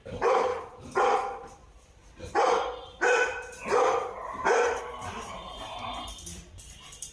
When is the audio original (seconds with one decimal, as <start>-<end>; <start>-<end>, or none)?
none